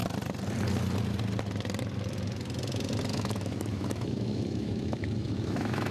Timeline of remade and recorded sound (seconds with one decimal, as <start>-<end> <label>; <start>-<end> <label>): 0.0-3.1 recorded; 3.1-5.9 remade